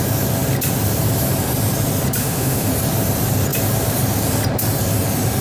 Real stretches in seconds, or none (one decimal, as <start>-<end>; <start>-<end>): 0.0-2.2; 2.7-5.4